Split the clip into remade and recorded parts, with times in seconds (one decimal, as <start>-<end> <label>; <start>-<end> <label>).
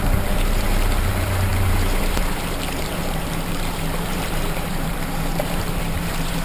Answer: 0.0-6.4 remade